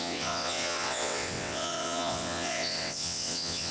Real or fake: fake